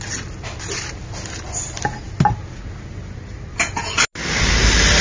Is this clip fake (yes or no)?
no